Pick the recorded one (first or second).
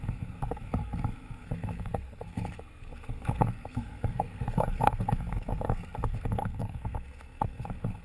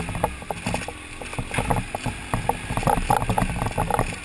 second